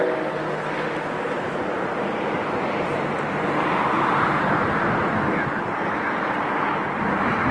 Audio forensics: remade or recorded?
recorded